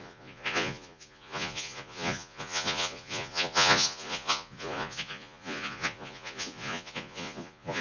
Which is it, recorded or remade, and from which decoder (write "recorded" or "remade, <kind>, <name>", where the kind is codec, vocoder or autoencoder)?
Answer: remade, vocoder, Vocos